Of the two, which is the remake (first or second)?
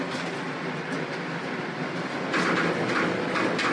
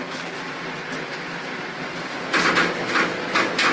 first